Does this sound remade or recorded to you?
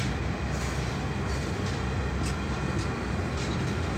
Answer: recorded